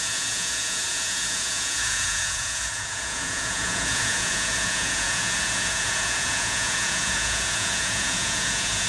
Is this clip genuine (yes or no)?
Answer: no